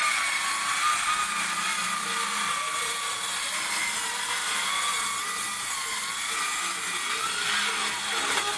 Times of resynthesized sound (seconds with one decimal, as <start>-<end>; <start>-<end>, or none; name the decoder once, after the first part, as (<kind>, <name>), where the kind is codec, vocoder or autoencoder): none